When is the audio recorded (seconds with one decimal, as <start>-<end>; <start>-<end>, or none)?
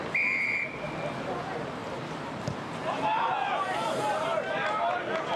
0.0-5.4